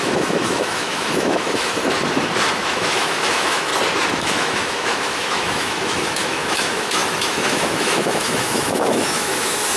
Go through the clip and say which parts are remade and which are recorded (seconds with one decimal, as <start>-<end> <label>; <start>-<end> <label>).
0.0-1.8 remade; 1.8-2.5 recorded; 2.5-3.7 remade; 3.7-4.2 recorded; 4.2-9.8 remade